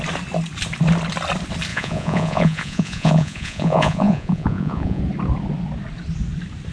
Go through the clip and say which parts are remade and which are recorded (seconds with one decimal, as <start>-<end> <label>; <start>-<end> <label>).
0.0-1.7 recorded; 1.7-5.0 remade; 5.0-6.7 recorded